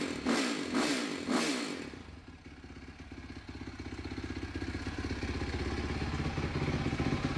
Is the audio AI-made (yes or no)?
no